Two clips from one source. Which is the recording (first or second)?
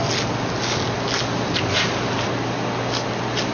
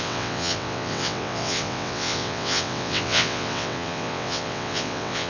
first